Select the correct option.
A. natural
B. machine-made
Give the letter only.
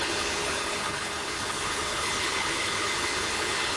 B